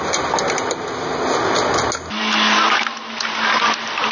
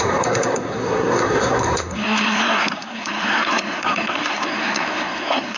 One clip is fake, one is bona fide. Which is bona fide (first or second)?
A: first